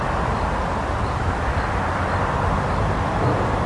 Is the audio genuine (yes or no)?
yes